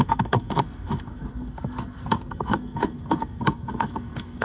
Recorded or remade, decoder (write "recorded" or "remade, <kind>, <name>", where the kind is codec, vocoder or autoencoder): remade, codec, SNAC